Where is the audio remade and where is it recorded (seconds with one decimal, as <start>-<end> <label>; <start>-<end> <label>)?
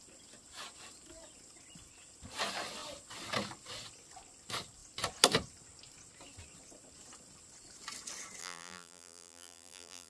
0.0-8.4 recorded; 8.4-10.1 remade